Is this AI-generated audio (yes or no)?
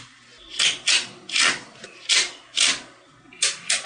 no